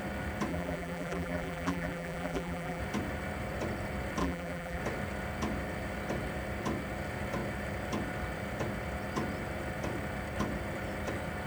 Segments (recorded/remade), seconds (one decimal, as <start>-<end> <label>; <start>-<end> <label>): 0.0-0.5 recorded; 0.5-2.8 remade; 2.8-4.2 recorded; 4.2-4.8 remade; 4.8-11.5 recorded